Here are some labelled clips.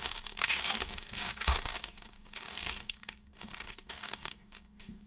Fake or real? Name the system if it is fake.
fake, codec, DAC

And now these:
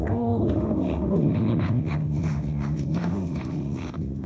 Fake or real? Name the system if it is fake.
fake, autoencoder, DAC-VAE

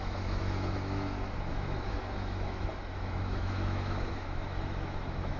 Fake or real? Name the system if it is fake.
fake, autoencoder, DAC-VAE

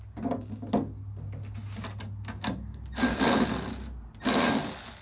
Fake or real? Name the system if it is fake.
real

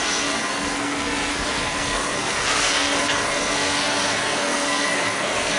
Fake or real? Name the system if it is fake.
fake, codec, SNAC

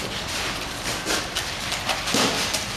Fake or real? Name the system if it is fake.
fake, vocoder, BigVGAN v2